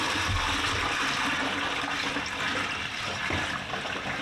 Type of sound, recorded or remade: recorded